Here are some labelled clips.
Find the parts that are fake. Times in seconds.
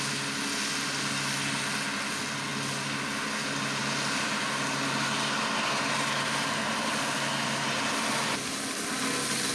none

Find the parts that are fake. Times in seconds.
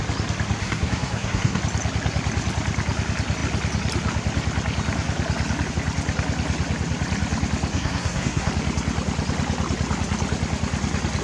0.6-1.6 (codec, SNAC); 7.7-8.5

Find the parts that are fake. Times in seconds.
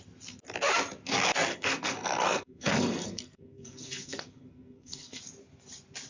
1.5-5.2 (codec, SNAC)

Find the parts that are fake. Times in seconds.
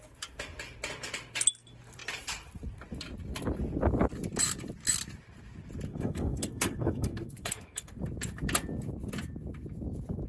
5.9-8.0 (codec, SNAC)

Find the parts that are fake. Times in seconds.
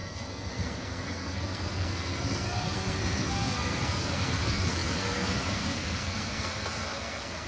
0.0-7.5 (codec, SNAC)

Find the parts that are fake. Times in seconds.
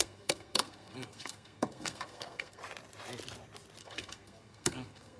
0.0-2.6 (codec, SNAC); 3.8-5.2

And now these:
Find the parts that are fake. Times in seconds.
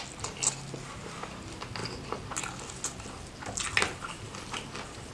none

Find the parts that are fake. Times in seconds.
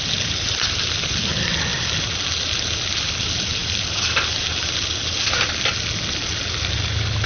none